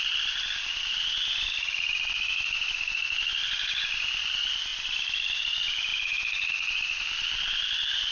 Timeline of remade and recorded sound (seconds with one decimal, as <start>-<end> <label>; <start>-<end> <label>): 0.0-8.1 recorded